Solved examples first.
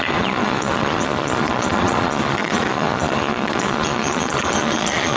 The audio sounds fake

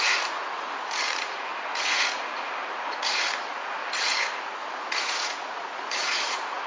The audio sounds fake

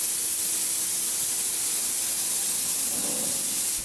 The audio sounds real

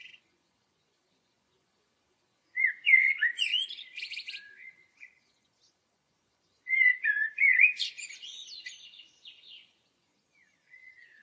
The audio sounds fake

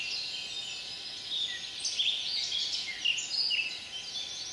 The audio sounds real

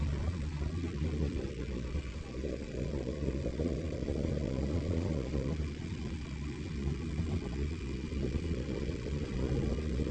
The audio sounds fake